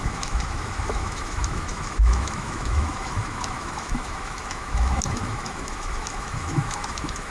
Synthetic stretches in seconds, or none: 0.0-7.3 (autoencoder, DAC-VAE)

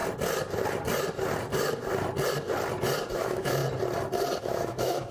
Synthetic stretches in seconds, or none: 3.1-3.6 (autoencoder, DAC-VAE); 4.4-5.1

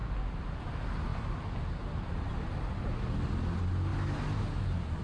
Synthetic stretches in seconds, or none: none

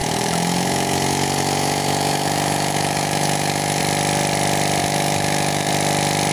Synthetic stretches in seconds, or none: 0.0-3.8 (autoencoder, DAC-VAE); 4.8-5.7

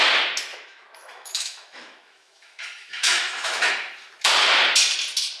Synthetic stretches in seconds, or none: 0.5-3.7 (autoencoder, DAC-VAE)

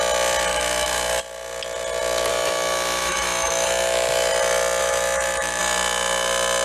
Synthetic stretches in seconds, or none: 0.5-1.2 (autoencoder, DAC-VAE); 2.3-4.3; 4.8-5.6